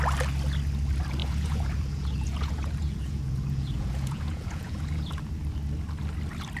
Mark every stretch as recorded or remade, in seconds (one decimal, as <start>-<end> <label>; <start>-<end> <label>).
0.0-1.2 recorded; 1.2-5.2 remade; 5.2-6.6 recorded